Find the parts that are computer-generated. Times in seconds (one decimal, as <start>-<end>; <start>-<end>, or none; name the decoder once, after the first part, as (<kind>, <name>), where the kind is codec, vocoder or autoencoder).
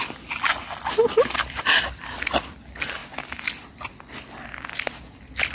none